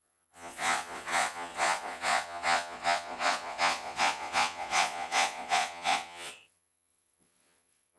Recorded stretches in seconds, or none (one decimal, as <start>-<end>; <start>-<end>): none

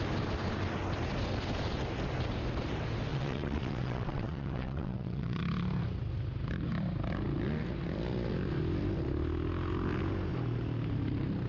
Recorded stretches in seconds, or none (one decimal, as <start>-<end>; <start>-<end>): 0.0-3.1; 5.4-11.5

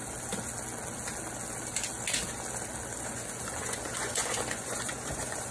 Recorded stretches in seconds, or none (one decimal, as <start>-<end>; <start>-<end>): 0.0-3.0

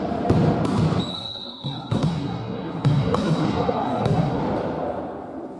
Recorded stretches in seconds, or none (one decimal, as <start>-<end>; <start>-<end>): 0.0-1.1; 4.4-5.6